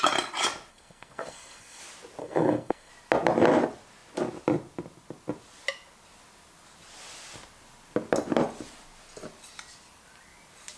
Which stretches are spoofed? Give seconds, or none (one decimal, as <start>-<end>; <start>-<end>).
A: 0.7-1.8; 2.2-2.9